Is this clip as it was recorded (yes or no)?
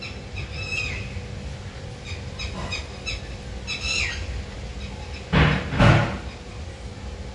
yes